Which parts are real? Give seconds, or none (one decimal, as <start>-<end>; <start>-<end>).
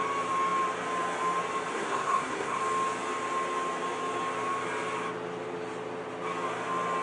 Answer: 0.0-1.7; 2.6-7.0